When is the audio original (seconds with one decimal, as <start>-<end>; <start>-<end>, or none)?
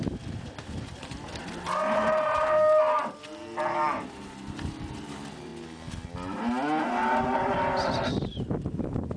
2.8-3.6; 5.5-9.2